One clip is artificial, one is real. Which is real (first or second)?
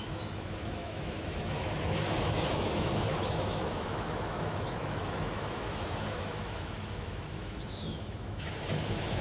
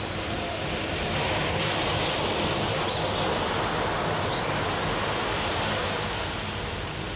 second